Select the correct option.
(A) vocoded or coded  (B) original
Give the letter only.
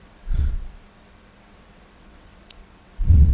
A